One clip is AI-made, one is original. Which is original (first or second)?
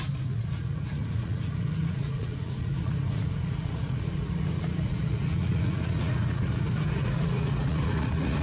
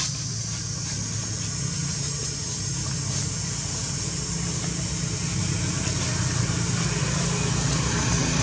second